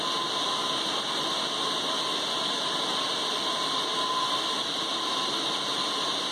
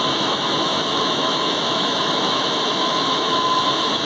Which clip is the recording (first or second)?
first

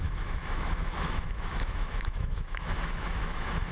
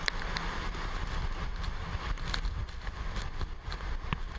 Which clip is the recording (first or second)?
second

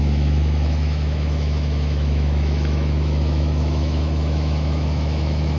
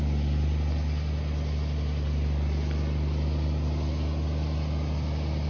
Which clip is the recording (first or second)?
second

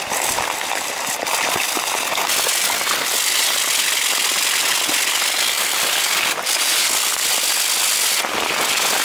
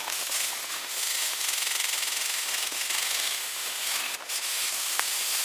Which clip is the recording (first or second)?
first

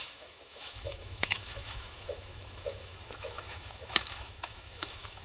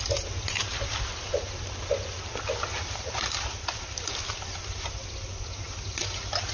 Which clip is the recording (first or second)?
second